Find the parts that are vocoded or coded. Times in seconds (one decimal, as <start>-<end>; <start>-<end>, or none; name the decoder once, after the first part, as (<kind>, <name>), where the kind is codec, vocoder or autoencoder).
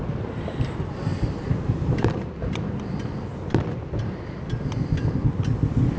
1.1-2.3 (vocoder, BigVGAN v2)